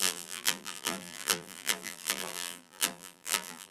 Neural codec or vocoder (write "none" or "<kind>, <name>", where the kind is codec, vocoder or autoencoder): vocoder, BigVGAN v2